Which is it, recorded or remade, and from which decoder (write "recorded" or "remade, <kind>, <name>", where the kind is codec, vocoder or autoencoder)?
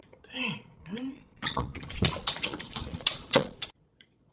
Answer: remade, vocoder, Vocos